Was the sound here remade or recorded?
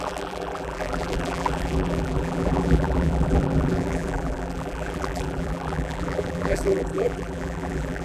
remade